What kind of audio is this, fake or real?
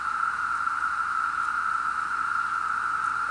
real